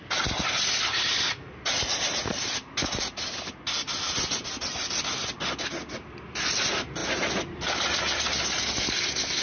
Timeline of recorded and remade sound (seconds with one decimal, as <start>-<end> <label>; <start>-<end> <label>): 0.0-9.4 recorded